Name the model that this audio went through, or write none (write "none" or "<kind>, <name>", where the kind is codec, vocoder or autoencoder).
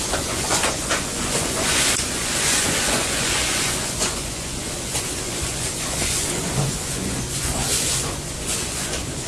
vocoder, Vocos